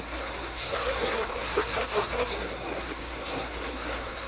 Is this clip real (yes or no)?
no